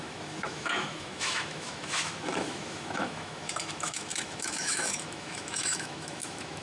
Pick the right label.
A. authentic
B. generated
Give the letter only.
B